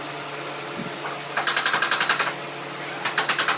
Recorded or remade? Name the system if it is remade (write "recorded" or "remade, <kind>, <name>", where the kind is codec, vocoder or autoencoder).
recorded